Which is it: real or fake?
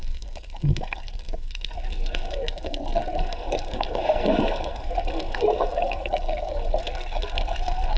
fake